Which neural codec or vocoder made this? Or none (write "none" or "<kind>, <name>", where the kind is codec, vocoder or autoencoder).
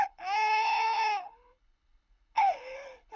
codec, HILCodec